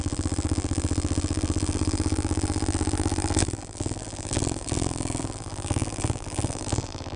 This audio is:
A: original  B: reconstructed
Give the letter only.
B